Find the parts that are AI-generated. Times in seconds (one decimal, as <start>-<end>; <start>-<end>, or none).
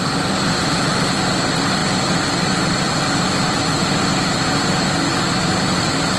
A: 0.0-4.1; 5.4-6.2